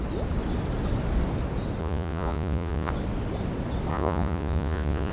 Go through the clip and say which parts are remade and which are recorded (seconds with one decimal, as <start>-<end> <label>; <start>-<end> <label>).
0.0-1.8 recorded; 1.8-2.9 remade; 2.9-3.9 recorded; 3.9-5.1 remade